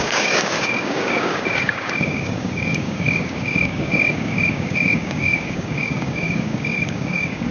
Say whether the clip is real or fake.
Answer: fake